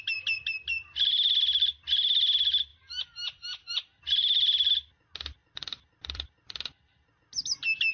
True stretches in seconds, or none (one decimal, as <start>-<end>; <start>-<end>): 0.0-0.7; 1.3-2.7; 4.7-5.4; 7.1-7.9